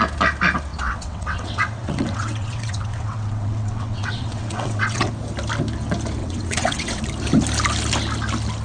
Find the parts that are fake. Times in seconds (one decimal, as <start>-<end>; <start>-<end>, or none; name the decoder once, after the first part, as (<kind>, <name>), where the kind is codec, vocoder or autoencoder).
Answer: 0.7-5.1 (vocoder, WaveNeXt); 6.2-7.0